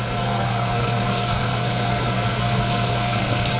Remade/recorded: remade